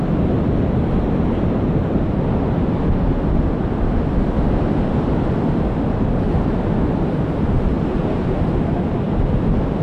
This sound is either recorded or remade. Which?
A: recorded